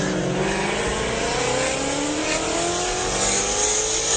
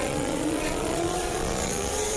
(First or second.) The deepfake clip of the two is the second